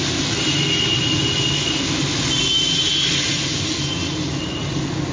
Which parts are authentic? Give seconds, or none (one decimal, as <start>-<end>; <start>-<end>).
0.0-5.1